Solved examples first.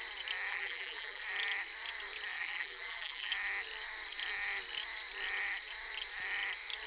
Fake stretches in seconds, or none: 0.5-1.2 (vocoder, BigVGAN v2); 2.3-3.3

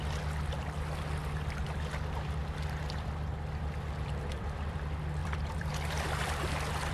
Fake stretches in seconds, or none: 5.2-6.5 (vocoder, BigVGAN v2)

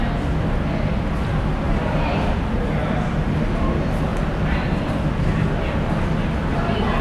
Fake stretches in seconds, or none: 4.1-5.0 (vocoder, BigVGAN v2)